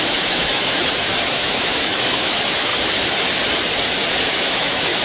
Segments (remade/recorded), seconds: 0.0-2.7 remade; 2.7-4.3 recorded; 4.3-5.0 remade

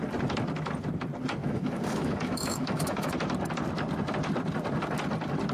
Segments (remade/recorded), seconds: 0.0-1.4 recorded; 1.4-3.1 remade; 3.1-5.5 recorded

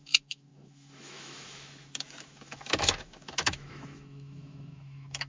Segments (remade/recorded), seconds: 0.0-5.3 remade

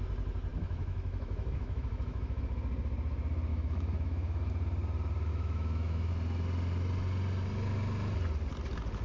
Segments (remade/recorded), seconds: 0.0-0.5 recorded; 0.5-2.4 remade; 2.4-3.5 recorded; 3.5-4.5 remade; 4.5-5.3 recorded; 5.3-6.1 remade; 6.1-9.0 recorded

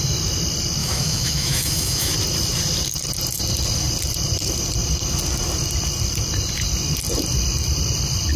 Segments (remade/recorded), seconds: 0.0-0.8 recorded; 0.8-2.1 remade; 2.1-8.4 recorded

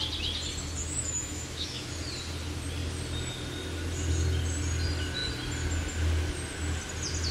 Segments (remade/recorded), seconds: 0.0-0.8 recorded; 0.8-1.9 remade; 1.9-7.3 recorded

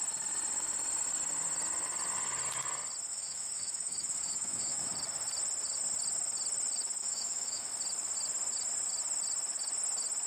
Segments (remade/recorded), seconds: 0.0-3.1 recorded; 3.1-4.9 remade; 4.9-7.0 recorded; 7.0-7.7 remade; 7.7-10.3 recorded

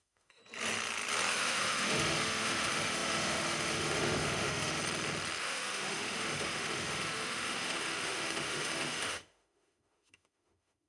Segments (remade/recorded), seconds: 0.0-0.4 remade; 0.4-1.3 recorded; 1.3-4.8 remade; 4.8-5.4 recorded; 5.4-10.9 remade